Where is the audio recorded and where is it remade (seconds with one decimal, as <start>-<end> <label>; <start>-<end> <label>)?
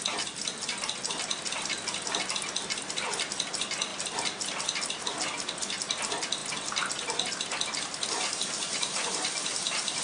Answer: 0.0-10.0 recorded